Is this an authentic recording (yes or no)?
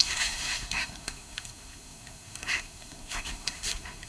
no